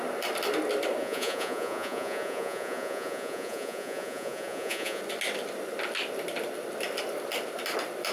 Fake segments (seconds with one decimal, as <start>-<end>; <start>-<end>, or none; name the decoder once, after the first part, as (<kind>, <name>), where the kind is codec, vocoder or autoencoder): 1.0-5.0 (vocoder, Vocos)

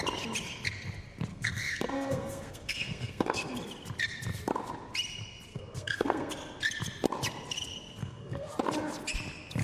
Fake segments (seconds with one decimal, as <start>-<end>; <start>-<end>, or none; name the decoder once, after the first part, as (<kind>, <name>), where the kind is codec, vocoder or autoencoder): 1.3-3.6 (codec, SNAC); 5.5-6.3; 8.0-8.5

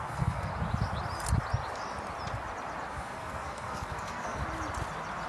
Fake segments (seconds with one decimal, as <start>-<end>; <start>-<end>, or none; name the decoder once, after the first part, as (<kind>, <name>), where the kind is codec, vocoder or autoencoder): 0.0-0.5 (codec, SNAC); 2.9-4.4

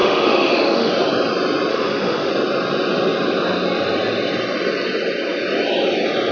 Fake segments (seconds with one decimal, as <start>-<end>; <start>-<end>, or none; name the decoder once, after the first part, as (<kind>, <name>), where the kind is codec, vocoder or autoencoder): 0.0-0.9 (autoencoder, DAC-VAE); 1.7-2.3

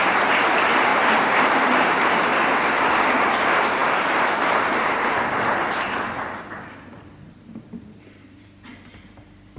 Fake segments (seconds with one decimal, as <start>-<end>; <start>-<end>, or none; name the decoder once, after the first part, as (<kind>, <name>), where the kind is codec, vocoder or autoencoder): 0.0-2.3 (vocoder, BigVGAN v2); 3.2-9.6

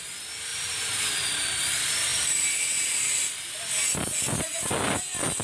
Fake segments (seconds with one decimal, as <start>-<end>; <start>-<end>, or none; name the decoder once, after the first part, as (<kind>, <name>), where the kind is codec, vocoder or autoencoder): 0.5-1.1 (vocoder, BigVGAN v2); 2.1-3.0

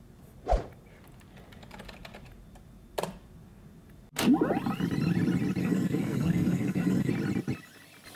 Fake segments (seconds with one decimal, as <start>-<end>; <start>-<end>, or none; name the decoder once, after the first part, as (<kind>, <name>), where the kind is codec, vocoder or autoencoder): 5.6-7.1 (codec, SNAC)